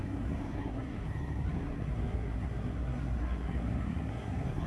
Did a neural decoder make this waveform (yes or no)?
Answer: yes